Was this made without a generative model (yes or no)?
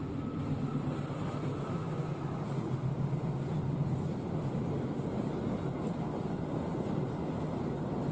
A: yes